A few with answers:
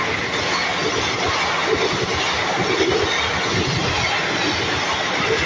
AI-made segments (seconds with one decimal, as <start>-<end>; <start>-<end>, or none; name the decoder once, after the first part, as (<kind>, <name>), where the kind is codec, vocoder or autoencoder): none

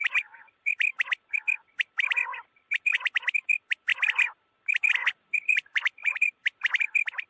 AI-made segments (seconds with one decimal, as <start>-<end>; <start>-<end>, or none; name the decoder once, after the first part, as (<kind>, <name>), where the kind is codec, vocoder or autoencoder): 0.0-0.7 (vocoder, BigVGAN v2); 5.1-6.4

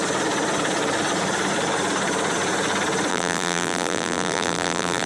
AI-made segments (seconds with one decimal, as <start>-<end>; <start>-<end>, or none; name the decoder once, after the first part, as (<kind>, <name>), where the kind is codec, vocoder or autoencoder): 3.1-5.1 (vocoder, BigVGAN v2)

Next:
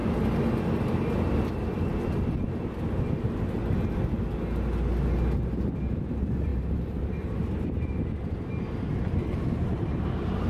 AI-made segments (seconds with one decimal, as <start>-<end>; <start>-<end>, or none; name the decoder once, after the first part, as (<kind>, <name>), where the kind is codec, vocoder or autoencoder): 2.2-3.6 (vocoder, BigVGAN v2); 5.7-10.5

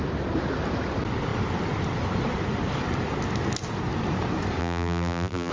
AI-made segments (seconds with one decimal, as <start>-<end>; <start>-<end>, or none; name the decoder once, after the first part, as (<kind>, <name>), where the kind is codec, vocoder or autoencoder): 4.6-5.5 (vocoder, BigVGAN v2)

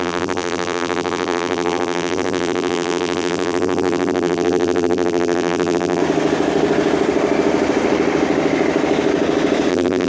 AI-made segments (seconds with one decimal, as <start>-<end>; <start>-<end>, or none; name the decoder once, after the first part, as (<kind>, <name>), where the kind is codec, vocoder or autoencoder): 0.0-6.0 (vocoder, BigVGAN v2); 9.7-10.1